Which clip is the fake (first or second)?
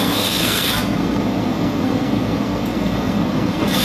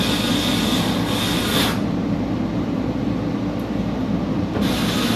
first